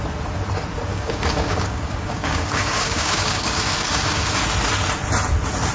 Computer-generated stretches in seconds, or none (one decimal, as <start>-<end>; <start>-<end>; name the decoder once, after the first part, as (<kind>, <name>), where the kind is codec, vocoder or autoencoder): 0.9-4.3 (codec, DAC)